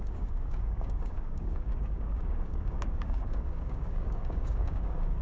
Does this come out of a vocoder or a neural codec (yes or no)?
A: yes